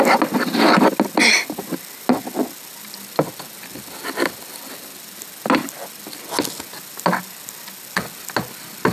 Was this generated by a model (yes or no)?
no